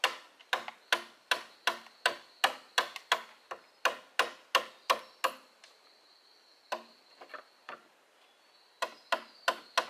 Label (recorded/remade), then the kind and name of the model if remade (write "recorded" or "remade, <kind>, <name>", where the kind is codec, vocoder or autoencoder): recorded